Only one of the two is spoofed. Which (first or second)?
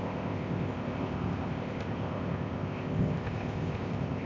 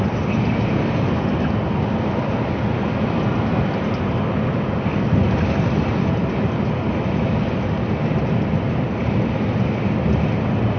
first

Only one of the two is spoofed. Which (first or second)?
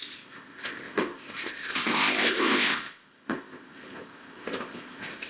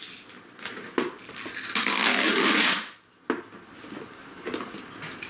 first